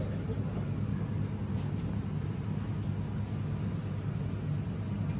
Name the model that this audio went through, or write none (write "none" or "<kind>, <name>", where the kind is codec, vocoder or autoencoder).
none